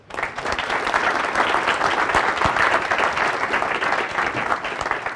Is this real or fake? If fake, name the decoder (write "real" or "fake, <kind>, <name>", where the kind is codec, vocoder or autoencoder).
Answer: real